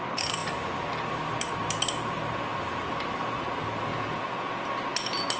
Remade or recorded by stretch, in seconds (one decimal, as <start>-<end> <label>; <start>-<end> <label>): 0.0-3.9 recorded; 3.9-4.6 remade; 4.6-5.4 recorded